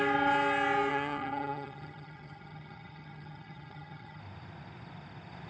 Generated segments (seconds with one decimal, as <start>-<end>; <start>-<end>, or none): 0.9-4.2